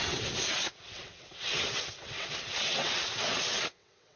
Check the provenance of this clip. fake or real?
fake